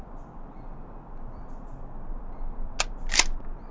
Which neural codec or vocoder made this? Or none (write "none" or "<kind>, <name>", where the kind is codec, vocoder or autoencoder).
none